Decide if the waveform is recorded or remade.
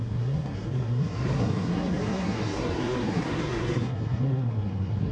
remade